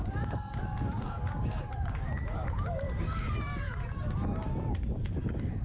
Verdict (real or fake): fake